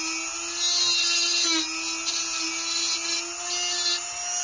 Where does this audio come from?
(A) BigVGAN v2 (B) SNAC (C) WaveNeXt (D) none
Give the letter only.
D